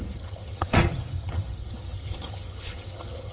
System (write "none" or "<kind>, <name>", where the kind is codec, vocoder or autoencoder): vocoder, HiFi-GAN